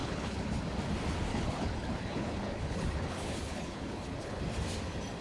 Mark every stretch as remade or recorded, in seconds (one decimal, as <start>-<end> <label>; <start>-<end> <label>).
0.0-0.6 remade; 0.6-1.3 recorded; 1.3-4.4 remade; 4.4-5.2 recorded